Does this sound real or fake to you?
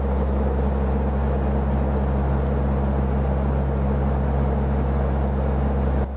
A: real